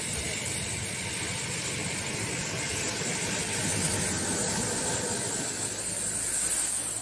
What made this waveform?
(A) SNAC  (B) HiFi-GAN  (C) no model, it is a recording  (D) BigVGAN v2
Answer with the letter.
C